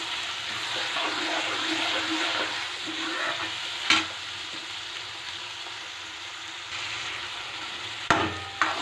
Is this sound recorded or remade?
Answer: recorded